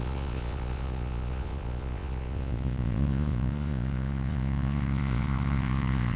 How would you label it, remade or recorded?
remade